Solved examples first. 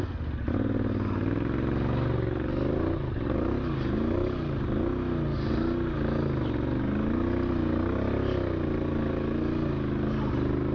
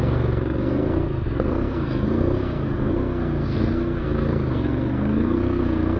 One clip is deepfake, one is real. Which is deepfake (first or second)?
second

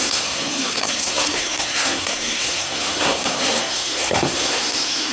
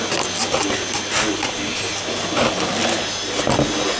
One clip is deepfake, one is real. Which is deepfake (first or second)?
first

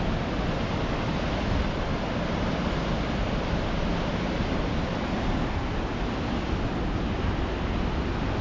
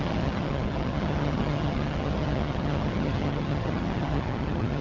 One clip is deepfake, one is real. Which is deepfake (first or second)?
second